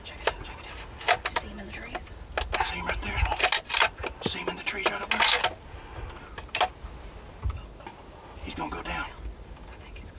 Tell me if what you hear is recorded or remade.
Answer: recorded